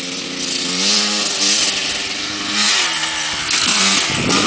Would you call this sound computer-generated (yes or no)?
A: no